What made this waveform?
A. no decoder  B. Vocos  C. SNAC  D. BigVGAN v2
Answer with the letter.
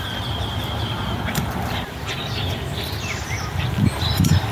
D